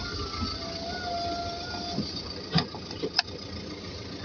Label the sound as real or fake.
real